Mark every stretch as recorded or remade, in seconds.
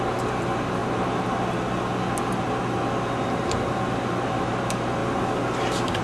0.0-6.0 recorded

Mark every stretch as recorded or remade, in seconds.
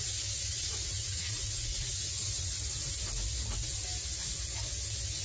0.0-0.5 recorded; 0.5-2.6 remade; 2.6-5.2 recorded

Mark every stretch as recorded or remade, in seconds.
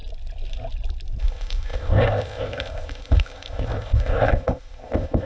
0.0-1.2 recorded; 1.2-5.3 remade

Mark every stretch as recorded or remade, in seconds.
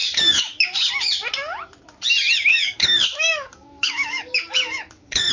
0.0-0.9 remade; 0.9-2.5 recorded; 2.5-5.3 remade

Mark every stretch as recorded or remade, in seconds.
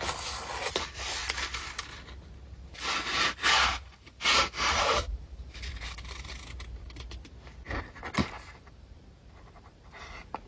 0.0-3.1 recorded; 3.1-6.3 remade; 6.3-8.2 recorded; 8.2-10.1 remade; 10.1-10.5 recorded